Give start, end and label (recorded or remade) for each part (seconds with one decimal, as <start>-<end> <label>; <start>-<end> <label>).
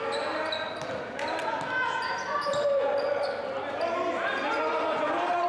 0.0-5.5 recorded